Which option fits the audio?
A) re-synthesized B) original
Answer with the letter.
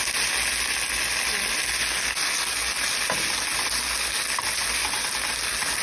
B